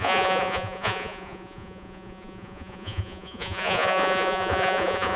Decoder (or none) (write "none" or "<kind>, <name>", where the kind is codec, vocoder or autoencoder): vocoder, Vocos